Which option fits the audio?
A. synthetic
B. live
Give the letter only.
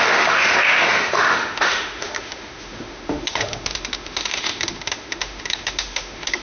A